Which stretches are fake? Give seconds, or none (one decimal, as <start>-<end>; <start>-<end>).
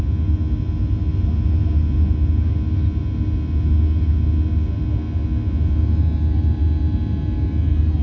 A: none